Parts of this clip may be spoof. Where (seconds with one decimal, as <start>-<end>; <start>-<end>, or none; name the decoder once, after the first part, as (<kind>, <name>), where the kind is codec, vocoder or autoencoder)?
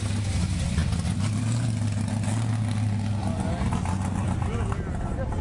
none